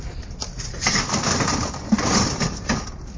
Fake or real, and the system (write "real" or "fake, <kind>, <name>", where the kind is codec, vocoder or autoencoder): real